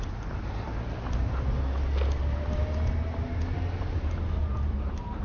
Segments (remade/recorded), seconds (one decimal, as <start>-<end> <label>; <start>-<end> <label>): 0.0-4.4 recorded; 4.4-5.2 remade